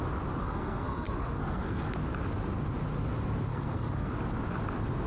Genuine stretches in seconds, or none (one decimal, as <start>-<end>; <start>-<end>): 0.0-0.4; 1.9-3.5; 4.1-5.1

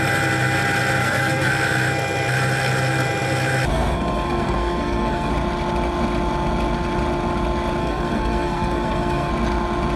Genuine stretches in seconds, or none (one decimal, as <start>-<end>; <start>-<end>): 0.0-1.0; 1.5-3.7; 5.3-7.8; 9.3-10.0

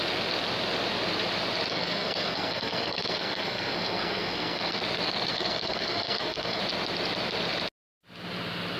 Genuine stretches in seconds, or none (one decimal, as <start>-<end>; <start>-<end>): 0.0-1.7; 4.8-5.3; 6.6-8.8